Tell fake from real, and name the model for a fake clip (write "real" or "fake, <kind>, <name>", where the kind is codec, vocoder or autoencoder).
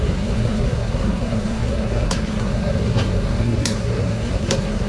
fake, codec, SNAC